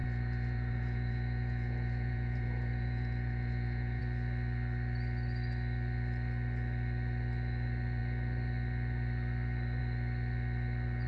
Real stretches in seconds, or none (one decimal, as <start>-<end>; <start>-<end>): 4.0-11.1